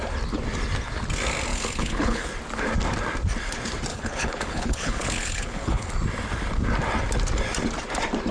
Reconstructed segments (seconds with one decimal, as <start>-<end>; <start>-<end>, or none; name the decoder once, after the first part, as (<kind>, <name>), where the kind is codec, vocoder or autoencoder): 1.5-2.3 (codec, HILCodec); 3.9-5.9